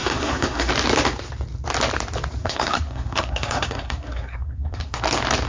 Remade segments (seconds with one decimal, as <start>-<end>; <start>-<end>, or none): 0.0-0.7; 2.4-5.0